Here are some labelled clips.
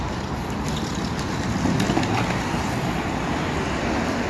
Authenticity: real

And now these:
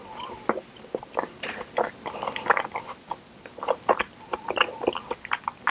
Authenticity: real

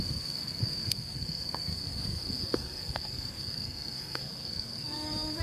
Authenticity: fake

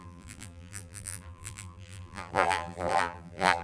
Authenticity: fake